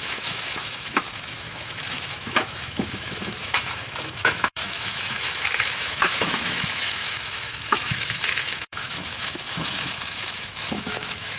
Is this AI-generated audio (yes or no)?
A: yes